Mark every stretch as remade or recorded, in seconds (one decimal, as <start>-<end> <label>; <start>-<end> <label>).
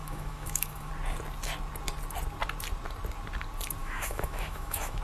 0.0-0.9 remade; 0.9-3.8 recorded; 3.8-5.0 remade